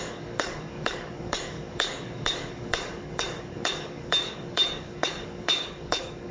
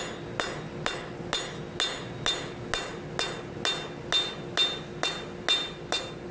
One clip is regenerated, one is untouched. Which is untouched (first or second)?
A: second